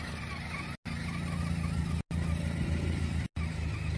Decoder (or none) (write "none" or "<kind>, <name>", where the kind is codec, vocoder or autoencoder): none